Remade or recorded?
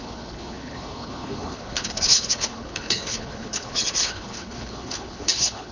remade